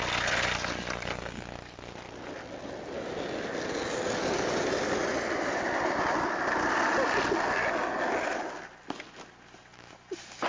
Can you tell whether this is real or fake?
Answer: real